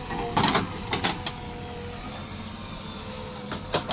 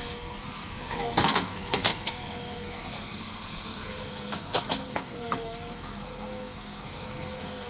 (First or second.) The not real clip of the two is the second